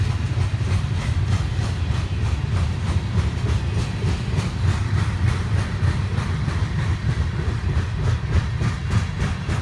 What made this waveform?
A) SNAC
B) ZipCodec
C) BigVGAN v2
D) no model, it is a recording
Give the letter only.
C